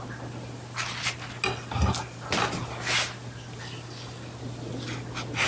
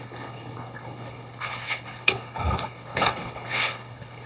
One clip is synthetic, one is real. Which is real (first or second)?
first